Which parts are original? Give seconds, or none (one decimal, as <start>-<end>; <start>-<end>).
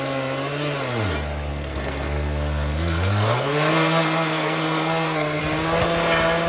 0.0-1.5; 5.4-6.5